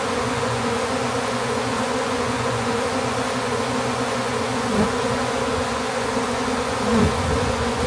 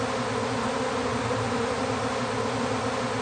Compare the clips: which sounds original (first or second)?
second